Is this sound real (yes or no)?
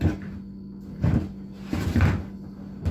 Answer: yes